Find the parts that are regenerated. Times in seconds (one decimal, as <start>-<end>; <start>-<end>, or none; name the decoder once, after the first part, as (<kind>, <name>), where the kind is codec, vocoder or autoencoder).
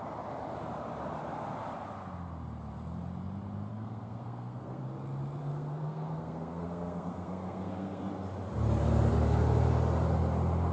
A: 3.7-4.8 (codec, SNAC); 5.4-8.0